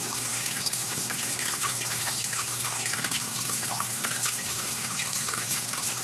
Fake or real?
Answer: fake